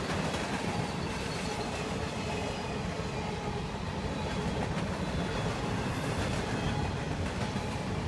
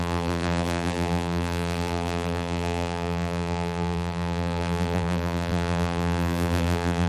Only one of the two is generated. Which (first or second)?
second